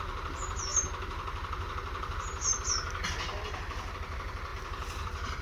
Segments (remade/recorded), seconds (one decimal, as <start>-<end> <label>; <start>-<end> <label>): 0.0-5.4 recorded